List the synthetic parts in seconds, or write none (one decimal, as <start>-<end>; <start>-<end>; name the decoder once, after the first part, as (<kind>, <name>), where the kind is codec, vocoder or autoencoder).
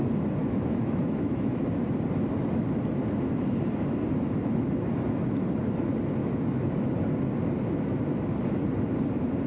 0.4-1.6 (autoencoder, DAC-VAE); 6.2-7.0